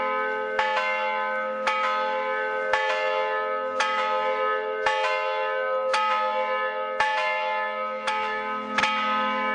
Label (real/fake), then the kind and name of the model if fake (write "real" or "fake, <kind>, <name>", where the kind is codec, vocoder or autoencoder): real